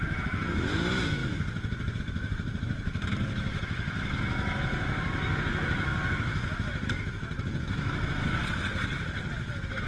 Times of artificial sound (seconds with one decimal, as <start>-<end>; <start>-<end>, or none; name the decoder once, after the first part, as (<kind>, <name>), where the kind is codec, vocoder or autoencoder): 0.0-8.4 (autoencoder, DAC-VAE); 9.3-9.9